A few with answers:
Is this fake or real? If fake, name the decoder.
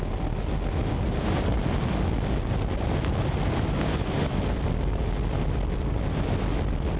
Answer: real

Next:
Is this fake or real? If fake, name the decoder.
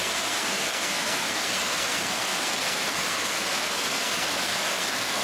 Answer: fake, codec, SNAC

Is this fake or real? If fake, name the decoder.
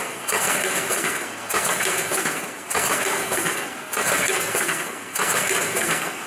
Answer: fake, codec, SNAC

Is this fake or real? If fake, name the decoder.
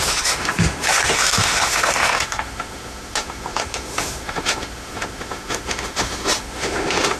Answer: fake, autoencoder, DAC-VAE